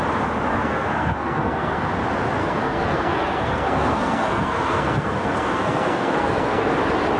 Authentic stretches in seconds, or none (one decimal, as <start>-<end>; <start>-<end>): 0.0-0.5; 1.9-2.4; 6.7-7.2